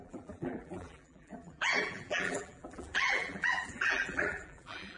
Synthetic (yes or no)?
yes